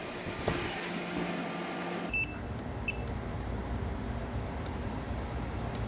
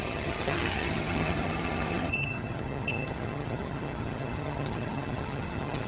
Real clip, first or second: first